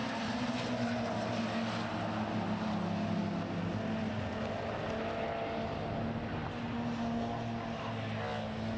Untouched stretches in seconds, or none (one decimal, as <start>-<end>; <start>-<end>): 0.0-8.8